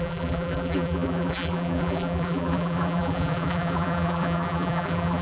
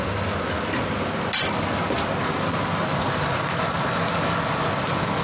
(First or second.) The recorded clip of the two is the second